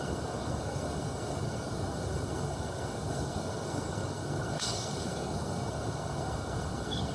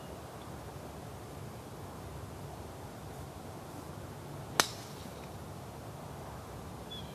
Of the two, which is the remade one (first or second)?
first